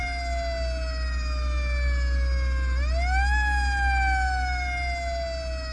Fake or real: real